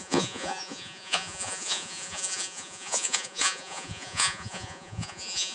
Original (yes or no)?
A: no